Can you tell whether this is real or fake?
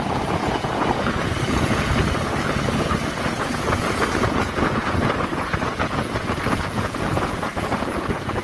fake